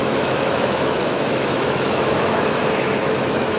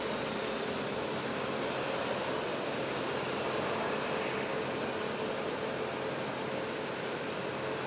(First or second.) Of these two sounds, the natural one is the second